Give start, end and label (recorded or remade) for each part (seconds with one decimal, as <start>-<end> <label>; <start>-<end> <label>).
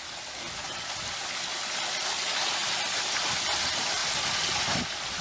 0.0-5.2 recorded